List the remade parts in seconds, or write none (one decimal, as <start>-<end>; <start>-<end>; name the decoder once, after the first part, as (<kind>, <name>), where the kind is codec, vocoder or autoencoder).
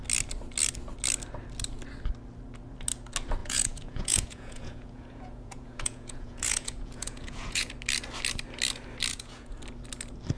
3.4-7.7 (vocoder, Vocos); 9.1-9.6